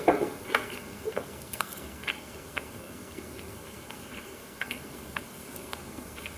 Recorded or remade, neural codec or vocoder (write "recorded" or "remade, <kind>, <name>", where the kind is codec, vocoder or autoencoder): remade, codec, SNAC